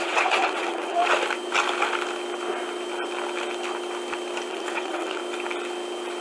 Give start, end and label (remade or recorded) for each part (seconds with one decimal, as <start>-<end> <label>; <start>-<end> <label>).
0.0-1.0 remade; 1.0-4.5 recorded; 4.5-5.2 remade; 5.2-6.2 recorded